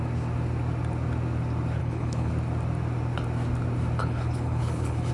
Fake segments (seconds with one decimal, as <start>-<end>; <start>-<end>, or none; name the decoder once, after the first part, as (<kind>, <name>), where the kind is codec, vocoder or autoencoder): 1.8-2.3 (codec, HILCodec); 4.0-5.1